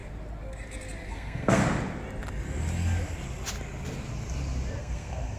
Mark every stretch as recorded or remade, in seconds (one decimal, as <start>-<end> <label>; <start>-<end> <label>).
0.0-1.1 recorded; 1.1-1.6 remade; 1.6-4.8 recorded; 4.8-5.4 remade